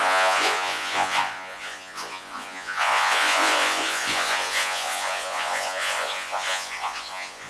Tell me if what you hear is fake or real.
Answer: fake